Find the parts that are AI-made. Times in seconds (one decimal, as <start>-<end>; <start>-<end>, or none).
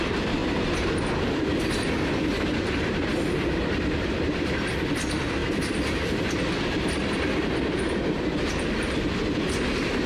0.0-0.4; 1.0-10.1